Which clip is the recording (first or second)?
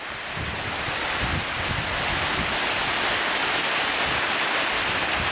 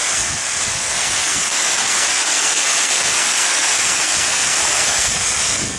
first